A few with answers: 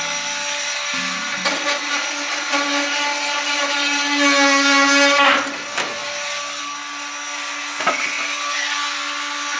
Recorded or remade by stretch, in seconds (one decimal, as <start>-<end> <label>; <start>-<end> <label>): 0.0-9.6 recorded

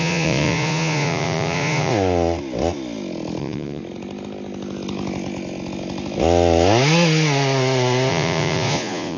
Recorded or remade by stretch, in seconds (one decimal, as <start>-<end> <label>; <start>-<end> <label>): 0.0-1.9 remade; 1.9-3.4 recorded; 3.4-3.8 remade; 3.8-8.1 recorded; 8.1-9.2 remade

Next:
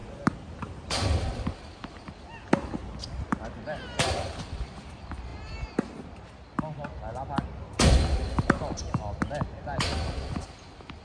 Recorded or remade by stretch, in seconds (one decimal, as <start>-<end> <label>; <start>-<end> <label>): 0.0-11.0 recorded